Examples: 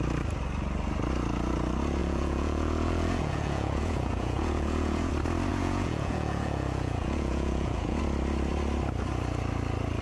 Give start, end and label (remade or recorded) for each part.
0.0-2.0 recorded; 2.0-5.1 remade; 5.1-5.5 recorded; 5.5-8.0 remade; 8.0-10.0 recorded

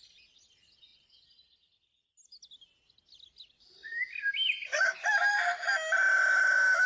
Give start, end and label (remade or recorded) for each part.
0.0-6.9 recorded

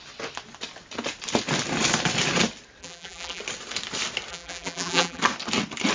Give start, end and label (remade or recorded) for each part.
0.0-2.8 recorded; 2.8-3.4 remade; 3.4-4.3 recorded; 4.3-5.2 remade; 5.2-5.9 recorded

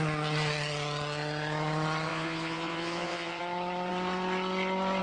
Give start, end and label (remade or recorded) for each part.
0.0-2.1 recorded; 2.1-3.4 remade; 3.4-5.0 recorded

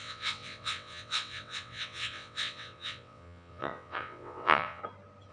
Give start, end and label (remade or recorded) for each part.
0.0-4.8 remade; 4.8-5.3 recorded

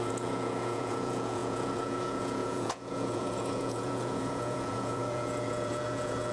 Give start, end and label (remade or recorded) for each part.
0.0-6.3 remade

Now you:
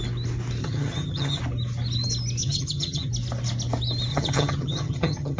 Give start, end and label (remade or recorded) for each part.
0.0-0.6 recorded; 0.6-1.4 remade; 1.4-2.4 recorded; 2.4-3.1 remade; 3.1-4.1 recorded; 4.1-5.4 remade

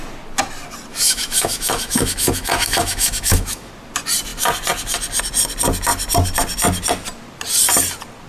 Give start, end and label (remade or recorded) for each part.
0.0-0.9 recorded; 0.9-3.7 remade; 3.7-8.3 recorded